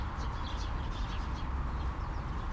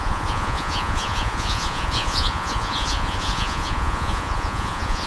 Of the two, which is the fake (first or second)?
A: second